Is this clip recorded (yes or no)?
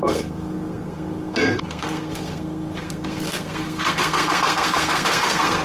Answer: no